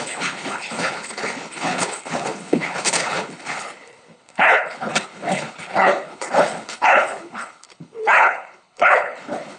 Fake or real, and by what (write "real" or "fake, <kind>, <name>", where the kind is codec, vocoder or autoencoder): fake, codec, HILCodec